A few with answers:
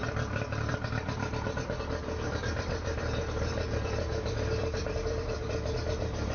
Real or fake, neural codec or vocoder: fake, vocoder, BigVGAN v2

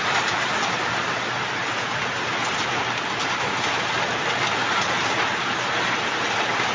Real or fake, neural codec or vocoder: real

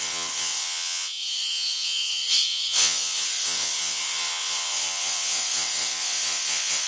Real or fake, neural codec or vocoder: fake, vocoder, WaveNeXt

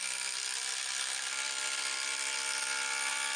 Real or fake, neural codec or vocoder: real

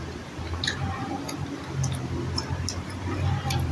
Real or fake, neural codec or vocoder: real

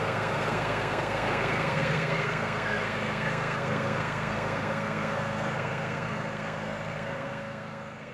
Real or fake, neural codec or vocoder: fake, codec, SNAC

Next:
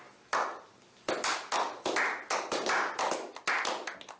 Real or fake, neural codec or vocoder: real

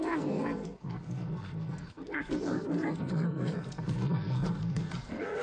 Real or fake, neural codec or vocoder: fake, codec, SNAC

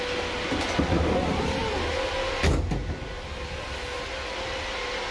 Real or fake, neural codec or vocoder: real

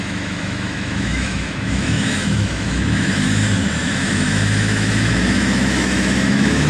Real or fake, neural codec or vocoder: fake, autoencoder, DAC-VAE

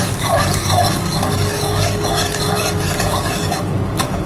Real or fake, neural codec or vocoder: fake, codec, DAC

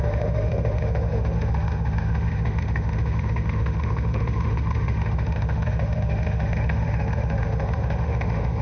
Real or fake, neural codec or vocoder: fake, autoencoder, DAC-VAE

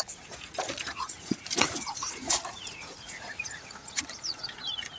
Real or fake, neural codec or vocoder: fake, vocoder, Vocos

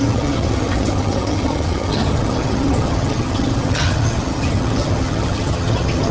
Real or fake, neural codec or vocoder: fake, vocoder, HiFi-GAN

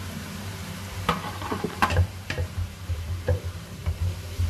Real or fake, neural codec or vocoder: fake, vocoder, BigVGAN v2